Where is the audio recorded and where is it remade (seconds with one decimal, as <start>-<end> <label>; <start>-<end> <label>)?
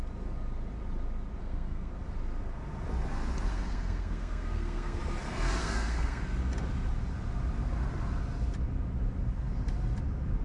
0.0-1.4 recorded; 1.4-1.9 remade; 1.9-3.5 recorded; 3.5-5.0 remade; 5.0-5.6 recorded; 5.6-6.2 remade; 6.2-10.4 recorded